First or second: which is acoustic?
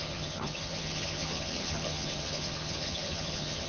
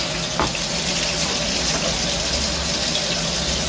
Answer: second